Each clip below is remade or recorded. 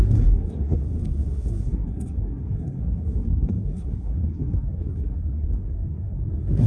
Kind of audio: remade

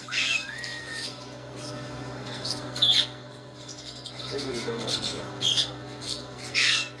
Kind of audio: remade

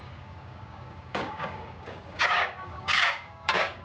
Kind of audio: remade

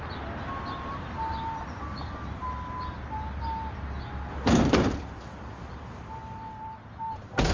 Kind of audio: recorded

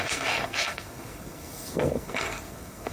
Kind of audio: remade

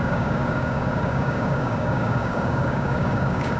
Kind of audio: remade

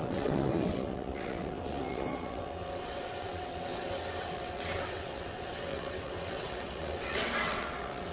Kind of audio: remade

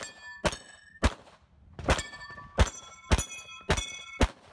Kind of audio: recorded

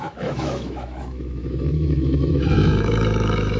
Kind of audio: remade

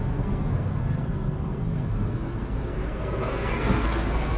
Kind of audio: remade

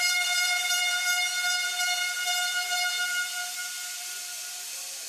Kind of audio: recorded